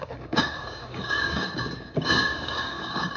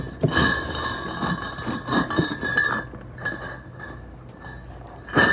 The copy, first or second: first